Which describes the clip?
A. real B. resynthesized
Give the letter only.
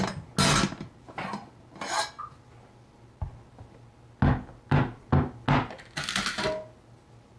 A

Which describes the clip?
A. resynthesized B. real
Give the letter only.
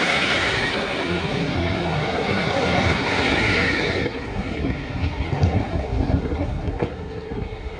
A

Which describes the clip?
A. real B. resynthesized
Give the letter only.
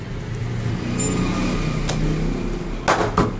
A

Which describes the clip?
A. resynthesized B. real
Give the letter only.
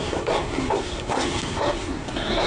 A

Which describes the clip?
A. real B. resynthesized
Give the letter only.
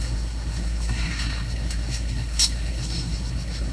B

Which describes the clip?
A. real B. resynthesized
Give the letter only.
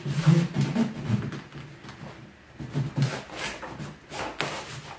A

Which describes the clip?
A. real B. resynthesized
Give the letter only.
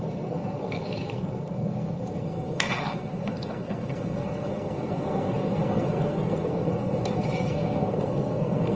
B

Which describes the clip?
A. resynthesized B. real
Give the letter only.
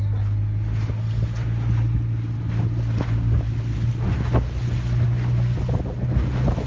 B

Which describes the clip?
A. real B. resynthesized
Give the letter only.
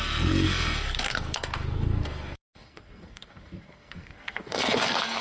B